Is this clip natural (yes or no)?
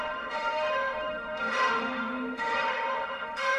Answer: no